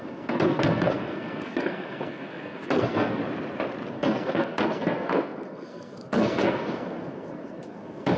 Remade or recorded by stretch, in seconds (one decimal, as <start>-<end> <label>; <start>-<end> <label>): 0.0-3.2 remade; 3.2-3.9 recorded; 3.9-8.2 remade